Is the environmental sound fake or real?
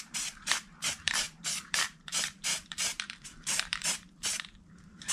fake